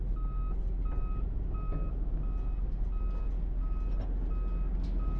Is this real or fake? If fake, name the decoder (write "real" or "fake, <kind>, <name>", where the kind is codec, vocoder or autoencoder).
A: real